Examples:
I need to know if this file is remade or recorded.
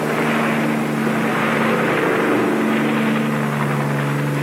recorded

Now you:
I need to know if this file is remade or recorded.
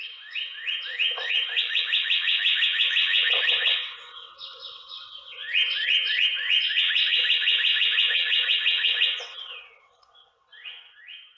remade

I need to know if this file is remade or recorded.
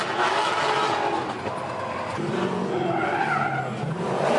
recorded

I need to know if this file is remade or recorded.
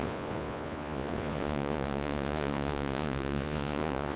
remade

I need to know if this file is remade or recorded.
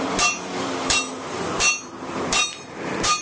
remade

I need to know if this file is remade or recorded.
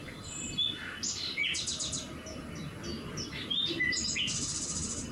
recorded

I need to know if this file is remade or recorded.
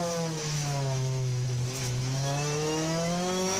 remade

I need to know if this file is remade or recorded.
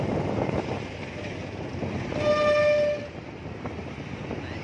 recorded